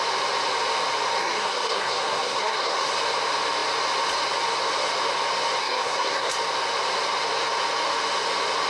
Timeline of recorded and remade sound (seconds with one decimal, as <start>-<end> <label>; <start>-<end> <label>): 0.0-1.2 recorded; 1.2-2.9 remade; 2.9-5.6 recorded; 5.6-6.3 remade; 6.3-8.7 recorded